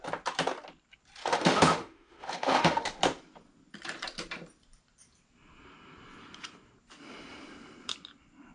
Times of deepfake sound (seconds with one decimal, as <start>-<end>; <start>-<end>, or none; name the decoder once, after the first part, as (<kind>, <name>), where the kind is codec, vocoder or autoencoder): 1.2-3.0 (autoencoder, DAC-VAE)